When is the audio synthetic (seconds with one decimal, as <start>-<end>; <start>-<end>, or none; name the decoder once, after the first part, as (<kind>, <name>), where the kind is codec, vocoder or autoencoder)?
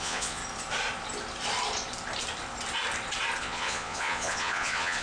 0.0-0.4 (vocoder, Vocos); 3.4-5.0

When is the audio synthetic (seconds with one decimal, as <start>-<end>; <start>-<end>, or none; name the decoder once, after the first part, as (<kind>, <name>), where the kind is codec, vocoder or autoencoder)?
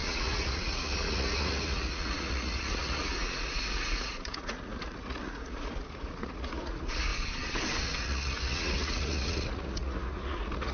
0.0-7.1 (vocoder, Vocos); 7.8-10.7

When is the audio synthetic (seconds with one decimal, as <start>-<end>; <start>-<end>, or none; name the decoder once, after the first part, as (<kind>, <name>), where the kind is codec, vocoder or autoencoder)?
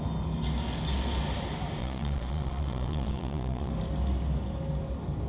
1.8-3.7 (vocoder, Vocos)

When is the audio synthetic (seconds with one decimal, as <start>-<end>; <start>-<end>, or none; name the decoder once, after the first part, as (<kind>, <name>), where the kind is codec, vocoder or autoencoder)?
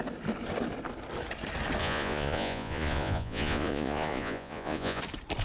1.8-5.0 (vocoder, Vocos)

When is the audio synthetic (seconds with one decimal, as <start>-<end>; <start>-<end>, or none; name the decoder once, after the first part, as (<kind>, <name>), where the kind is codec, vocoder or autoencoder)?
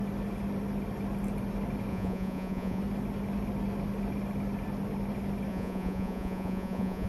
1.9-2.8 (vocoder, Vocos); 5.5-7.1